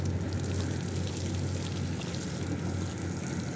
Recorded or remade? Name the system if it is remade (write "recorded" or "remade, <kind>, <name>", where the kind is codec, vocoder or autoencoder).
recorded